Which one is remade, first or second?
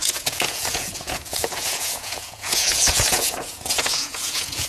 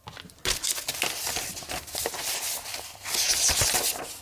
first